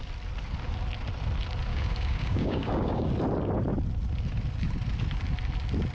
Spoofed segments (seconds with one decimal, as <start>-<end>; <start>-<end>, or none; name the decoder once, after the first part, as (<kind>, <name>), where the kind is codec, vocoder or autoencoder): 1.7-3.1 (codec, DAC)